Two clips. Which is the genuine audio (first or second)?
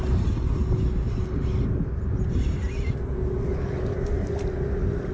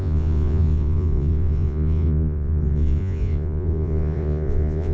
first